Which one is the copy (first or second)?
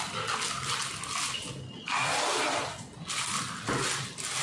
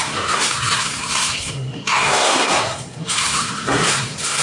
second